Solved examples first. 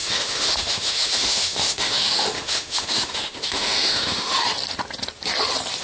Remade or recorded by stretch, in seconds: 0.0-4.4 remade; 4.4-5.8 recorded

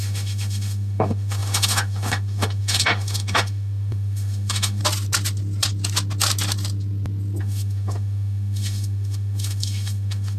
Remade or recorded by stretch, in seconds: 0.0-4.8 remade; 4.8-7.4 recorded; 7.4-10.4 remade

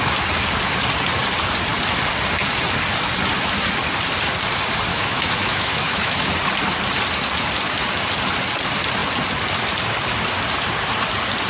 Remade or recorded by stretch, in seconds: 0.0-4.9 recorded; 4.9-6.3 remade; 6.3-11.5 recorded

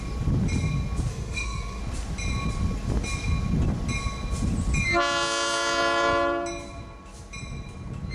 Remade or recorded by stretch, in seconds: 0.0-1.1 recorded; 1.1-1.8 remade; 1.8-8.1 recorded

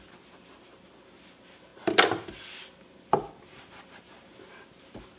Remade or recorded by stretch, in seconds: 0.0-5.2 recorded